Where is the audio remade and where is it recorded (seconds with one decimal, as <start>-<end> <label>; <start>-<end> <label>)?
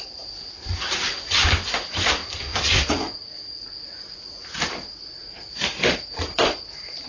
0.0-2.2 remade; 2.2-4.4 recorded; 4.4-7.1 remade